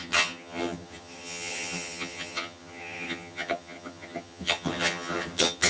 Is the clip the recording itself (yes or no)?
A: no